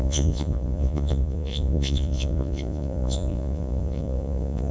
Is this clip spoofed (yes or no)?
yes